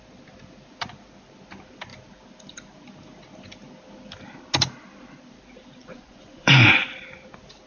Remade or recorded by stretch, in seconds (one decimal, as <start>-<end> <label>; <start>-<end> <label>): 0.0-5.8 recorded; 5.8-6.9 remade; 6.9-7.7 recorded